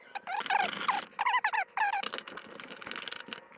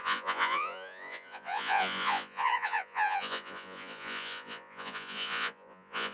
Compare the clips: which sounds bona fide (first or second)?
first